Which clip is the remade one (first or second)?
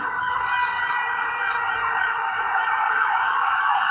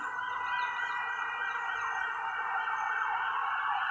first